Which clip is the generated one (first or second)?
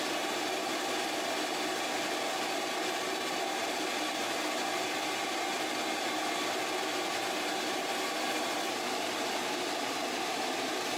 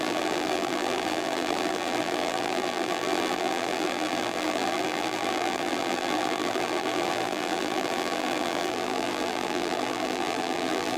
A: second